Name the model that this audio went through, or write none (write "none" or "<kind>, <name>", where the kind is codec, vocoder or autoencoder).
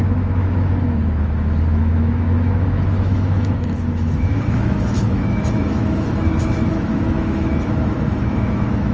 autoencoder, DAC-VAE